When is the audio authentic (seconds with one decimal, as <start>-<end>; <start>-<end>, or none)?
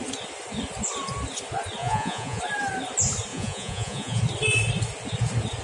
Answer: 0.0-1.8; 2.4-3.3; 4.2-5.6